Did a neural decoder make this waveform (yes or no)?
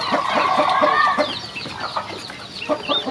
no